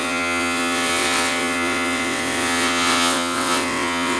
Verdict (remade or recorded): remade